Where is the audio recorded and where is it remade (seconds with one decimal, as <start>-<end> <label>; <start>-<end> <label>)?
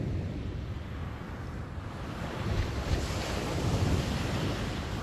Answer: 0.0-5.0 recorded